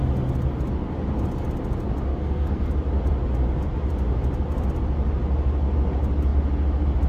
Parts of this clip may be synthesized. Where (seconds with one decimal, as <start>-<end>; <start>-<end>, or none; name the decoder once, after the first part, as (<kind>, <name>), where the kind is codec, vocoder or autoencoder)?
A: 2.1-2.7 (codec, SNAC)